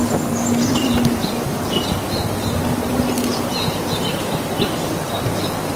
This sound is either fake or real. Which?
real